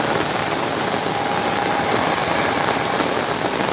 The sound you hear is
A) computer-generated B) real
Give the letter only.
B